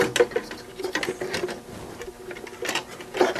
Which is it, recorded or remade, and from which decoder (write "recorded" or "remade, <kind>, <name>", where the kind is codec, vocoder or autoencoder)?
recorded